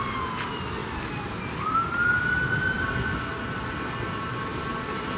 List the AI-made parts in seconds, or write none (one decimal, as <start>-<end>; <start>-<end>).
none